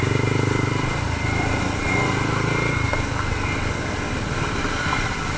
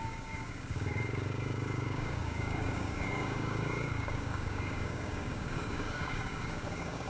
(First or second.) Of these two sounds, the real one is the first